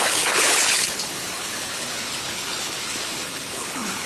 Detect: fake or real fake